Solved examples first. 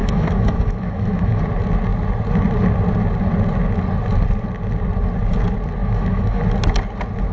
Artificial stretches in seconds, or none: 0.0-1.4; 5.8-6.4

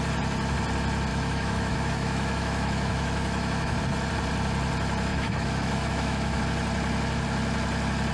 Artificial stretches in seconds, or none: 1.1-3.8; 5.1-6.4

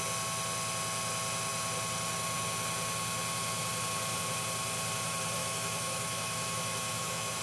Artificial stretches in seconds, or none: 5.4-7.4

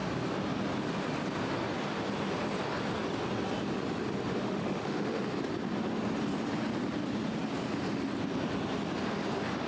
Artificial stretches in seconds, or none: 4.4-5.2

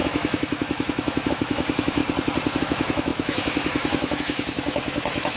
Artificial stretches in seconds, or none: 0.0-2.0; 2.6-5.4

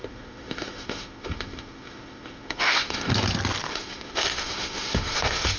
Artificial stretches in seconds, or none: 0.0-3.1; 3.7-5.6